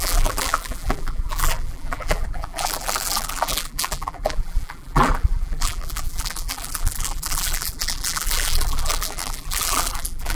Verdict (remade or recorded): remade